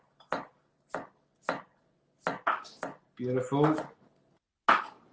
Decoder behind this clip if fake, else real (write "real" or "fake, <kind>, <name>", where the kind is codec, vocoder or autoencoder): real